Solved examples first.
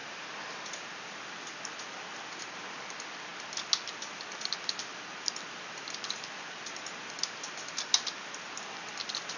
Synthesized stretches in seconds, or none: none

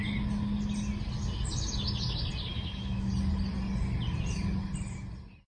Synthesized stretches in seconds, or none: 2.5-3.1 (autoencoder, DAC-VAE)

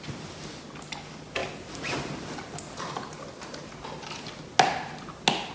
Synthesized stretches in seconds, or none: none

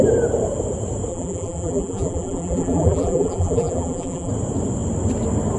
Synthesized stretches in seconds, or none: 1.1-4.3 (vocoder, BigVGAN v2)

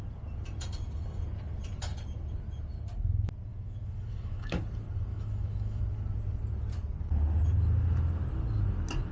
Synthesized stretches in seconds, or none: 3.5-4.6 (autoencoder, DAC-VAE); 5.1-5.8